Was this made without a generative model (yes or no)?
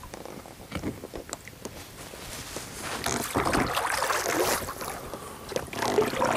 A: yes